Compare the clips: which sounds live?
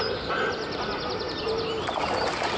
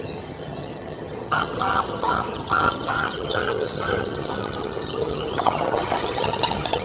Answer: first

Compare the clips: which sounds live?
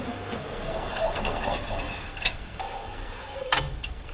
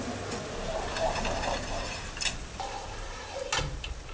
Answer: second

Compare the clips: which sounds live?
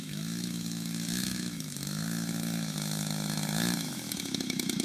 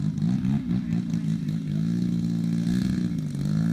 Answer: second